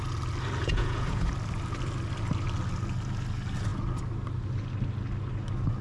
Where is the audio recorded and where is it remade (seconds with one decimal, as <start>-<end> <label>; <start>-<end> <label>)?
0.0-0.6 recorded; 0.6-1.3 remade; 1.3-5.8 recorded